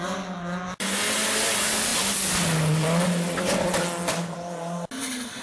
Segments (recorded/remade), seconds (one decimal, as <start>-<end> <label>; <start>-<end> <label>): 0.0-5.4 recorded